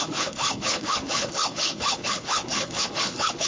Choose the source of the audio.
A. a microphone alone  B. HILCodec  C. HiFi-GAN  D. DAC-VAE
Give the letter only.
B